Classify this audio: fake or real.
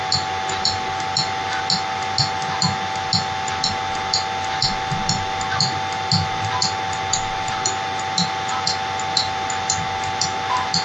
real